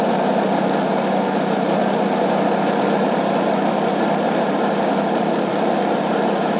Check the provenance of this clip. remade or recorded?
recorded